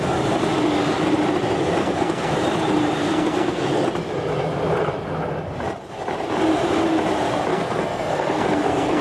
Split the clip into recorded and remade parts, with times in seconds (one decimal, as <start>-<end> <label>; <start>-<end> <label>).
0.0-1.8 recorded; 1.8-2.3 remade; 2.3-3.0 recorded; 3.0-3.7 remade; 3.7-7.5 recorded; 7.5-9.0 remade